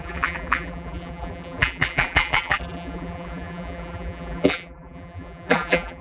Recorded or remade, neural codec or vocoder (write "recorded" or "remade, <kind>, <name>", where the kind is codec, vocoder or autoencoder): remade, vocoder, BigVGAN v2